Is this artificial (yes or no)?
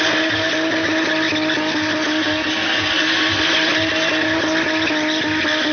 no